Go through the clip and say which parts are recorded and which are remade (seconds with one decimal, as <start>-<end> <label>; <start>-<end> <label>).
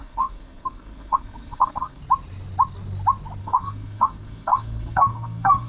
0.0-2.0 remade; 2.0-3.4 recorded; 3.4-5.7 remade